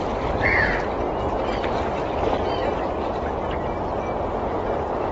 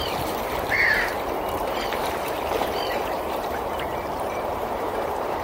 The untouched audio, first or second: first